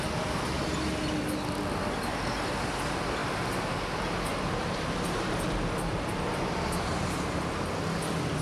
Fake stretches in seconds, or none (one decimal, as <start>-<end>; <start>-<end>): 2.1-2.8; 4.3-7.7